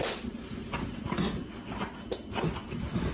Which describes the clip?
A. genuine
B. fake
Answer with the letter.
A